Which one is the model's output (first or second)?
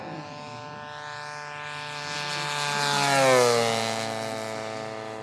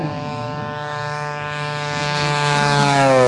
second